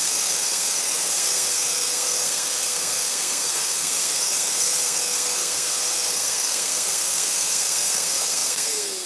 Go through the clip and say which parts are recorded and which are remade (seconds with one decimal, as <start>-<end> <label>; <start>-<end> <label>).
0.0-9.1 remade